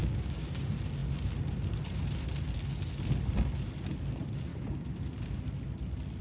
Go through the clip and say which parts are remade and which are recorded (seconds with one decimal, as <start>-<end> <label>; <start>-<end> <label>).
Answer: 0.0-0.6 remade; 0.6-4.5 recorded; 4.5-5.1 remade; 5.1-6.2 recorded